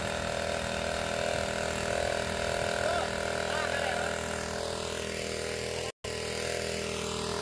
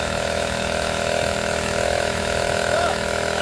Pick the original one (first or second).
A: first